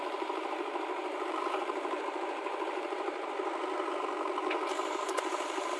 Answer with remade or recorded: remade